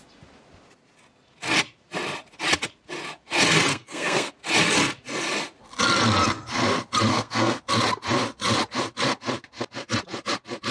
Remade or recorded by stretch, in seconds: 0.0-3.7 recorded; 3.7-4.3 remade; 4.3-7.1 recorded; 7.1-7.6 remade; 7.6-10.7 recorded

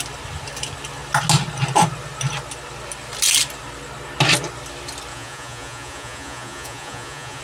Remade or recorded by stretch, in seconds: 0.0-5.1 recorded; 5.1-7.4 remade